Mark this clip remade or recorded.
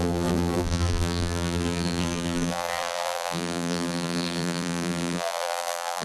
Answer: remade